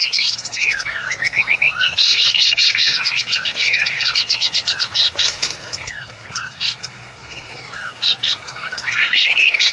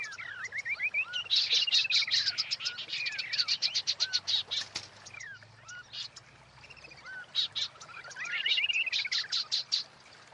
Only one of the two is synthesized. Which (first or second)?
first